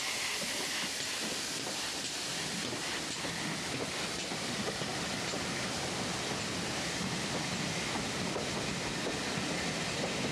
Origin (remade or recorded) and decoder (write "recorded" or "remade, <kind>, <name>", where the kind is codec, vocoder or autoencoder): recorded